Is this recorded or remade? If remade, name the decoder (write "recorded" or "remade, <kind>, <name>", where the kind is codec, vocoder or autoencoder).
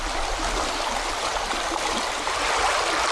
recorded